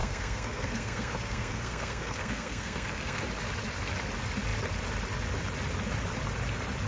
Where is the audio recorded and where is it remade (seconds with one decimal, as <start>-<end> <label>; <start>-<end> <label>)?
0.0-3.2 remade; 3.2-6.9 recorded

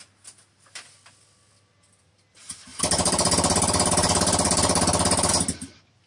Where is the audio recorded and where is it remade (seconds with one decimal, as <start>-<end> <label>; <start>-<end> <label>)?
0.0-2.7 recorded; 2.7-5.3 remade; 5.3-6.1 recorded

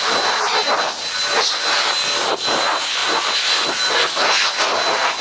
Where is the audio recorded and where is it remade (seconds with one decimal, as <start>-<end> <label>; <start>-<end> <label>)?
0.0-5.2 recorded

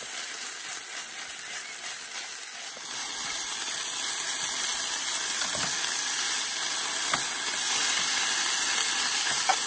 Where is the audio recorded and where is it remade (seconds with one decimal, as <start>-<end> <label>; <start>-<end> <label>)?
0.0-9.7 recorded

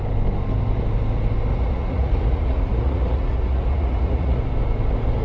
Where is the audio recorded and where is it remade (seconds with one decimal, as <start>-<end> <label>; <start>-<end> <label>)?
0.0-1.5 recorded; 1.5-4.4 remade; 4.4-5.2 recorded